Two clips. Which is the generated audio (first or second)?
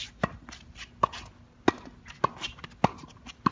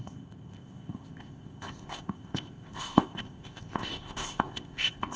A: second